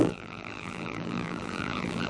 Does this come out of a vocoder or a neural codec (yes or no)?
yes